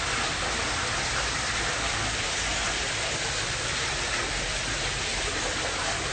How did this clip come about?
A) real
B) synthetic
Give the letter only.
A